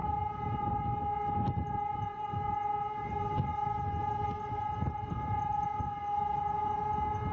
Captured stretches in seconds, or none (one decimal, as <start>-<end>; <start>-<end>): 0.0-7.3